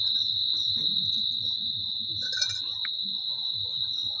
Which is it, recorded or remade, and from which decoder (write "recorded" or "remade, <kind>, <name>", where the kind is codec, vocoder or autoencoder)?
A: recorded